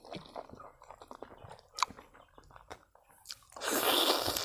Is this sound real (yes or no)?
yes